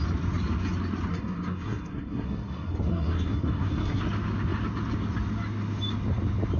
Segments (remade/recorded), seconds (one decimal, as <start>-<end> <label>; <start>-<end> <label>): 0.0-1.1 recorded; 1.1-4.0 remade; 4.0-6.6 recorded